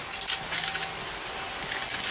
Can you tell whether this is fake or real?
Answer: real